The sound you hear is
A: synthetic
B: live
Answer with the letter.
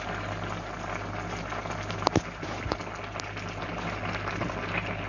B